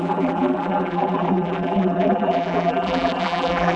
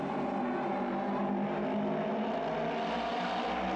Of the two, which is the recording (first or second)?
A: second